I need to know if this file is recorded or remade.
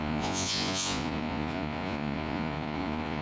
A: remade